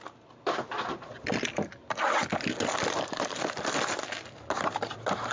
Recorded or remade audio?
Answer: recorded